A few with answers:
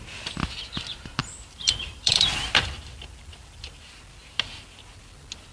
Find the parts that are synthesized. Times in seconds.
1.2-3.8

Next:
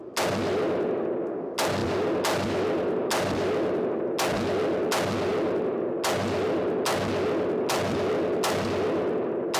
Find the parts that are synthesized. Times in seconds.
none

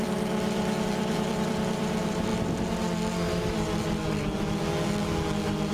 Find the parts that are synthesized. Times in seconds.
0.0-2.3